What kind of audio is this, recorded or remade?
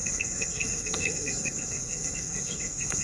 remade